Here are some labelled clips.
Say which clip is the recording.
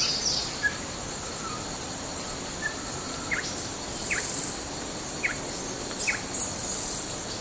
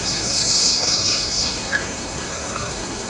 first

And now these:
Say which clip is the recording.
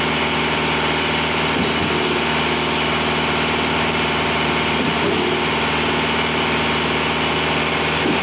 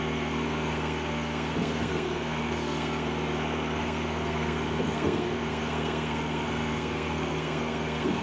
first